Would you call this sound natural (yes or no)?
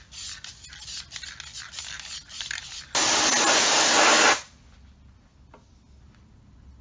yes